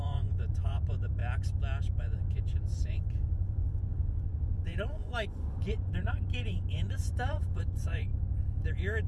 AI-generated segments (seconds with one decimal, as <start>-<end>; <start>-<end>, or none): 0.0-1.2; 2.0-8.1; 8.7-9.1